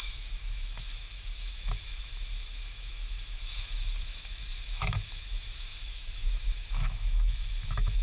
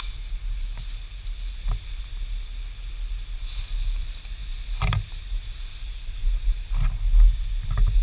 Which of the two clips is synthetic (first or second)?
first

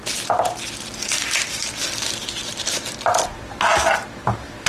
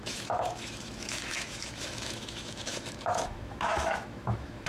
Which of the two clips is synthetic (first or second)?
second